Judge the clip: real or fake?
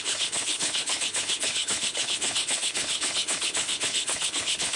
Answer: fake